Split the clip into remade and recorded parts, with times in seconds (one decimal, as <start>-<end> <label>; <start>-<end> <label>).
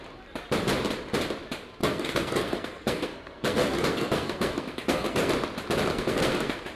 0.0-1.8 recorded; 1.8-5.3 remade; 5.3-5.9 recorded; 5.9-6.8 remade